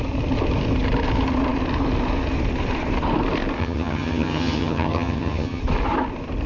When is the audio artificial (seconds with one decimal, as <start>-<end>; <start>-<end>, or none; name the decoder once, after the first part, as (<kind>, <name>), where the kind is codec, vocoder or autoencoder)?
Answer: 3.6-5.6 (vocoder, HiFi-GAN)